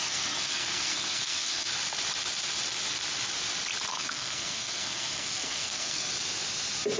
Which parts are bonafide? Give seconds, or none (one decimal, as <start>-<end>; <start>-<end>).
1.7-3.9; 6.1-7.0